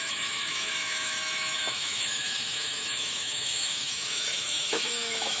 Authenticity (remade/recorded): remade